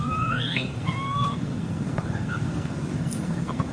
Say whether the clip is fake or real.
fake